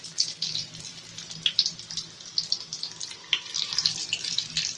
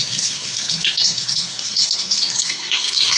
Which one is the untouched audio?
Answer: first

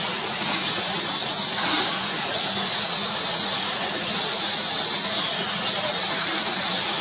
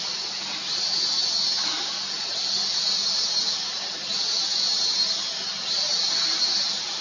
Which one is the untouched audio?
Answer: second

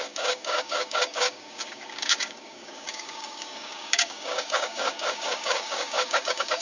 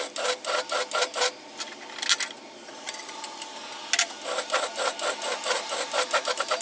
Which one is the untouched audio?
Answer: second